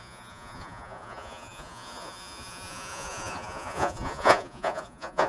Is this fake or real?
fake